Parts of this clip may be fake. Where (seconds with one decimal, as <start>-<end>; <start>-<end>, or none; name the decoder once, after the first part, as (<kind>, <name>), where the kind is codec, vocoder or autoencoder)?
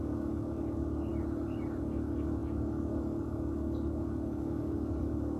0.0-1.1 (codec, DAC); 1.8-5.4